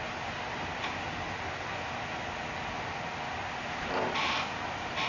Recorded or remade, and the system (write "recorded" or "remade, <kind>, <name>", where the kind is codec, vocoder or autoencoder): recorded